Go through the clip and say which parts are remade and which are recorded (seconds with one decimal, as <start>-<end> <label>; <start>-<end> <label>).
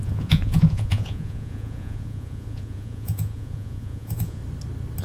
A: 0.0-4.4 remade; 4.4-5.0 recorded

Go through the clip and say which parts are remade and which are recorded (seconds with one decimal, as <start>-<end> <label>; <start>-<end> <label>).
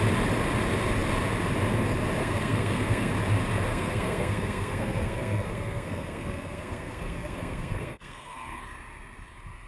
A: 0.0-2.2 recorded; 2.2-3.1 remade; 3.1-3.7 recorded; 3.7-8.6 remade; 8.6-9.7 recorded